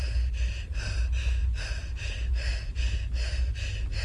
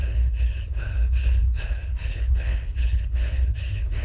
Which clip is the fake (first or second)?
second